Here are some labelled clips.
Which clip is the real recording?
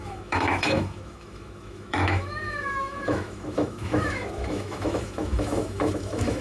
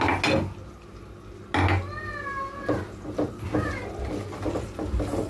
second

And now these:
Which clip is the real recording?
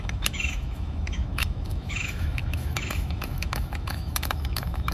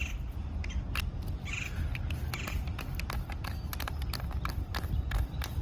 second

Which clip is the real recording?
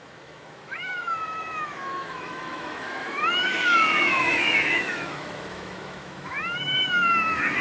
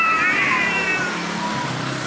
second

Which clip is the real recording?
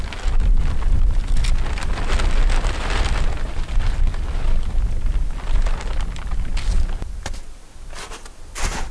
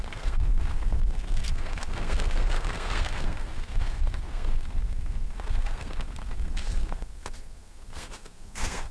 first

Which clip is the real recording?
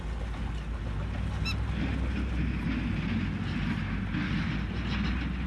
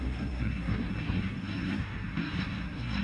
first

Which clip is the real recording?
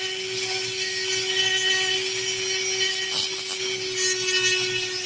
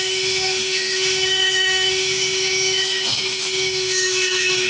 first